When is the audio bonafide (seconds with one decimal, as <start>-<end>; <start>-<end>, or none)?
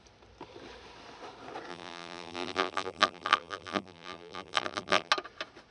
0.0-1.7; 5.1-5.7